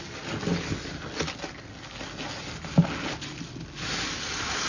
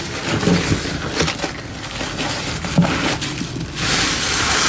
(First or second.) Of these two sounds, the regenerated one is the second